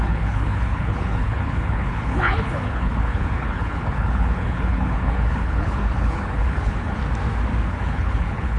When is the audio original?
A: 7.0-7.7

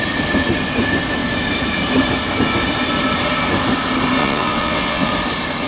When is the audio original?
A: 0.0-4.2; 5.1-5.7

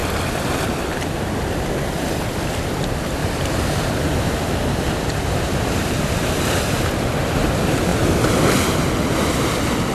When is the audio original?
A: 0.0-3.2; 6.9-9.9

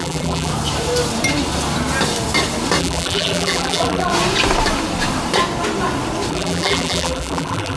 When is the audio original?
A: 0.5-2.8; 4.1-6.3

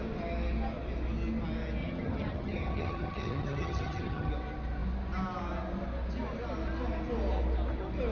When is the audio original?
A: 0.0-1.8; 4.3-8.1

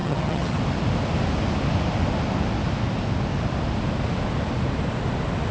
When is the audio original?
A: 0.6-5.5

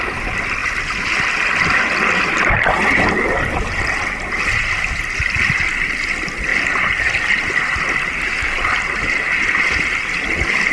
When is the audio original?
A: 0.0-0.6; 1.8-6.5; 7.2-10.7